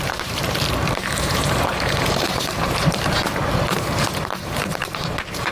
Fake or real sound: fake